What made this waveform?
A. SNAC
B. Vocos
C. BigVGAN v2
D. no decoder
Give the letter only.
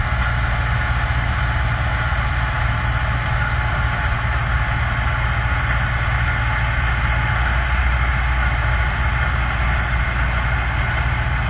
D